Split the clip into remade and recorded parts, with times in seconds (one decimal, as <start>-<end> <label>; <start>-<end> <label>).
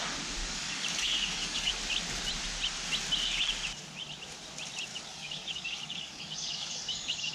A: 0.0-0.4 recorded; 0.4-1.7 remade; 1.7-4.9 recorded; 4.9-7.3 remade